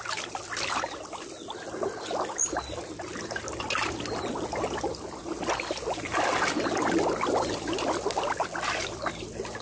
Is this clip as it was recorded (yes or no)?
yes